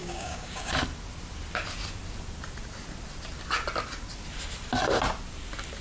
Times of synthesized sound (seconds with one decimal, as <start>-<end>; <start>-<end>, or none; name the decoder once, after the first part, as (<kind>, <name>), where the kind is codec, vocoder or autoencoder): 0.0-0.7 (codec, DAC)